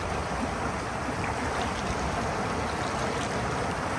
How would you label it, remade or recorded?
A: recorded